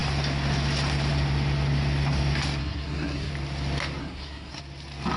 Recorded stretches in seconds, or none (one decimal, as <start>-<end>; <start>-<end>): 0.0-2.6; 3.3-4.0; 4.6-5.2